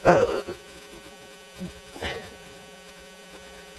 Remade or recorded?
remade